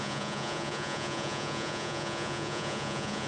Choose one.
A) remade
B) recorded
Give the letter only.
A